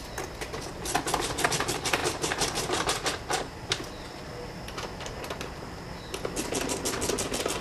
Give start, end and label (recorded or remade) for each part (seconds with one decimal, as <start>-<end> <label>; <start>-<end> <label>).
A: 0.0-7.6 recorded